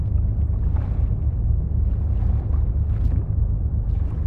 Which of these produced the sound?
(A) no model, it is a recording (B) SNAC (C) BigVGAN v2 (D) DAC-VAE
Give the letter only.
A